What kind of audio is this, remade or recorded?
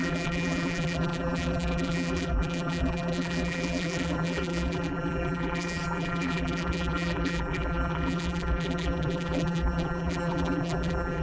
remade